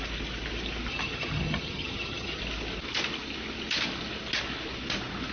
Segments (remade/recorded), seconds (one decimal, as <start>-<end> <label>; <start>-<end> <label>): 0.0-0.9 recorded; 0.9-2.4 remade; 2.4-5.3 recorded